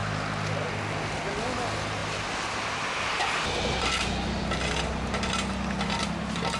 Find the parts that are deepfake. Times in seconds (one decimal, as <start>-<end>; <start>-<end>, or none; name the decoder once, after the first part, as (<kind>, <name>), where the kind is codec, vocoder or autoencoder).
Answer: none